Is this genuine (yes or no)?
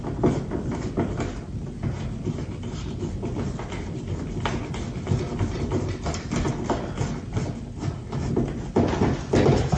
yes